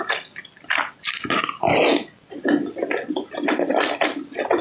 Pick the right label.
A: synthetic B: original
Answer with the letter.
B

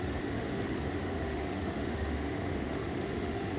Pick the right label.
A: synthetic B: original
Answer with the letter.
A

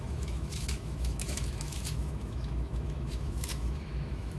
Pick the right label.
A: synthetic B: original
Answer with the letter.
A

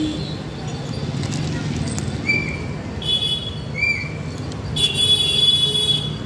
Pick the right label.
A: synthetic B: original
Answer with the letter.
B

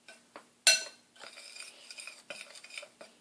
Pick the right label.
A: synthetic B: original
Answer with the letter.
B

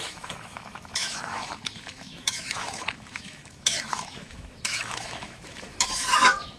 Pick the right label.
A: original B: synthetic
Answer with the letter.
B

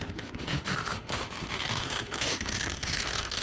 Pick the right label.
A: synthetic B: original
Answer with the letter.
A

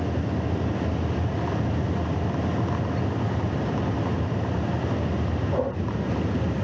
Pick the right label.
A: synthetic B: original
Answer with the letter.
B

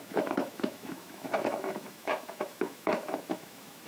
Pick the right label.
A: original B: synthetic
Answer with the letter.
B